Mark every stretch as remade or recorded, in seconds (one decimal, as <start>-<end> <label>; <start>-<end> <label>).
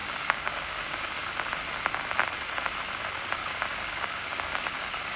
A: 0.0-1.3 remade; 1.3-3.4 recorded; 3.4-5.2 remade